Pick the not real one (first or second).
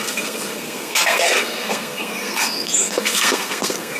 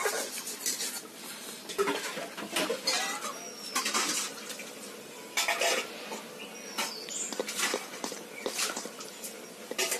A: first